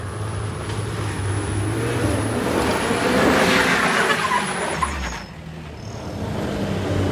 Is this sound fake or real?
real